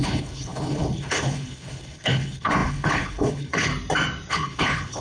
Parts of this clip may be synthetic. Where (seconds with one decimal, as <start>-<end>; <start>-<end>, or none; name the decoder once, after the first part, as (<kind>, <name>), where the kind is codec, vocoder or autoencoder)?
0.0-3.7 (codec, HILCodec); 4.3-5.0